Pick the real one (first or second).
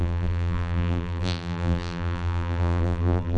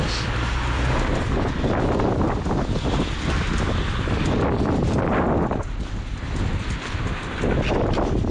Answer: second